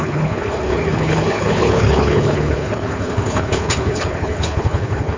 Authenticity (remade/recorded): remade